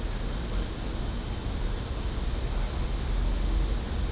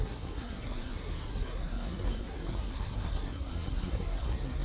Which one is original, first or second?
first